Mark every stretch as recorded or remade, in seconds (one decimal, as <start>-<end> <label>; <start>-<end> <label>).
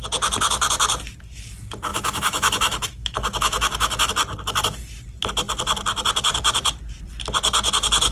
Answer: 0.0-1.9 recorded; 1.9-4.1 remade; 4.1-8.1 recorded